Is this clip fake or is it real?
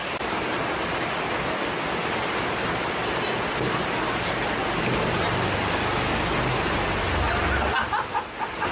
real